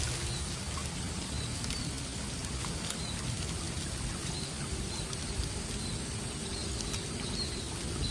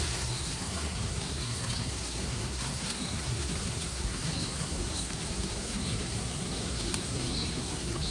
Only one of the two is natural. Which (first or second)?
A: first